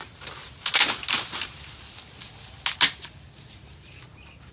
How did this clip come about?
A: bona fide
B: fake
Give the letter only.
A